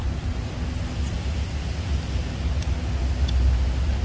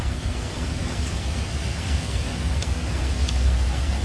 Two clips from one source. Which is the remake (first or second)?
second